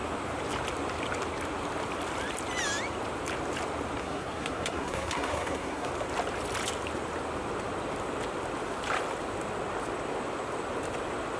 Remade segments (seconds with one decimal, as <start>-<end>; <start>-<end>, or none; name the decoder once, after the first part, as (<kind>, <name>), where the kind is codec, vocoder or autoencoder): 4.0-5.9 (codec, SNAC)